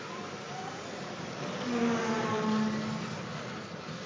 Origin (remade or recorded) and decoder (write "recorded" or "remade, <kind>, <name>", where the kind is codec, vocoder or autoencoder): recorded